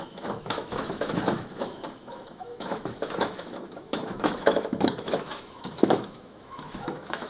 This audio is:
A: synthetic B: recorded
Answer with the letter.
A